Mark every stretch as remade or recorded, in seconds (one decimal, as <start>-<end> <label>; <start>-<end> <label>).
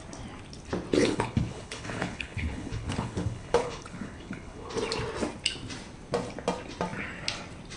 0.0-1.0 recorded; 1.0-4.7 remade; 4.7-7.8 recorded